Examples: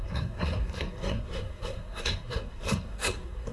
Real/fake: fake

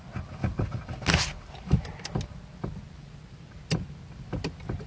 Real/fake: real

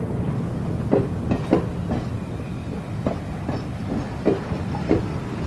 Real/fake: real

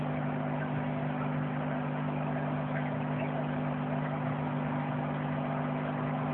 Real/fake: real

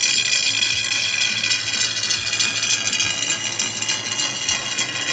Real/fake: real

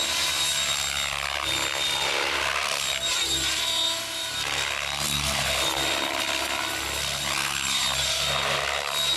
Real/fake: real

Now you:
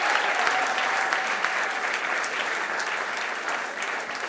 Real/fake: real